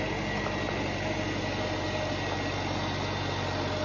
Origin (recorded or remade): recorded